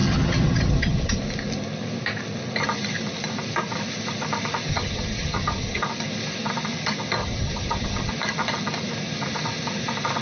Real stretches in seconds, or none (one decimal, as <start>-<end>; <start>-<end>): 1.2-4.7; 5.8-7.2; 8.1-10.2